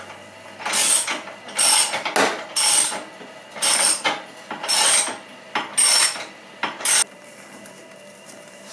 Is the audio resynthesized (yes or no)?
no